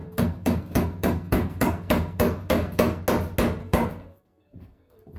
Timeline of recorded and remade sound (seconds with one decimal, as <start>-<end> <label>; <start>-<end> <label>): 0.0-3.0 remade; 3.0-3.6 recorded; 3.6-5.2 remade